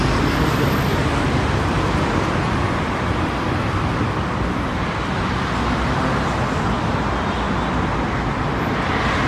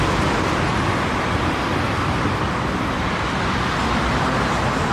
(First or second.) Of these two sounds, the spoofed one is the second